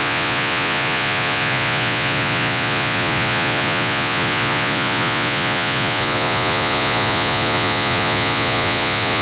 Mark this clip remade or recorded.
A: remade